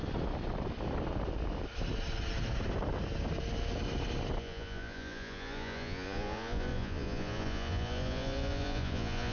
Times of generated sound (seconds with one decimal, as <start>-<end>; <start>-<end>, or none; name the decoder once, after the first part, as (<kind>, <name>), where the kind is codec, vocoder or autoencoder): 4.4-9.3 (vocoder, Vocos)